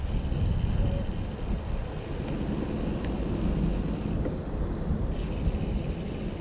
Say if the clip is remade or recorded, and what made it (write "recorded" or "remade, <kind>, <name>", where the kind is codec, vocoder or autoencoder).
recorded